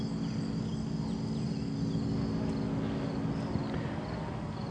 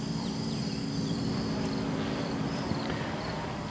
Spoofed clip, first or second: second